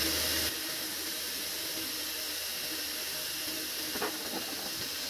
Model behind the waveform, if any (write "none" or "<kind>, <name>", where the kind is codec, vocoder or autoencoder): none